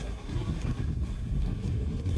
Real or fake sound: fake